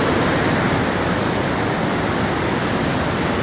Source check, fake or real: real